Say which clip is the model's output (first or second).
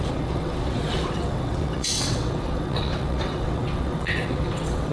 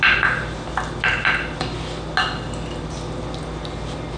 first